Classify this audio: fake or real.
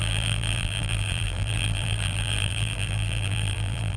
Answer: fake